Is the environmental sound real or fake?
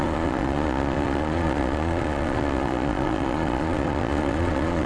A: fake